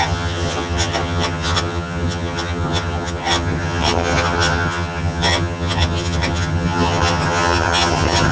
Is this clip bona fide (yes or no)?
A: no